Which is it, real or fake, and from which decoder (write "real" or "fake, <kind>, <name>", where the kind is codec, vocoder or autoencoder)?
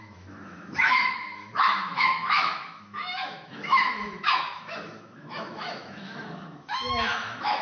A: fake, autoencoder, DAC-VAE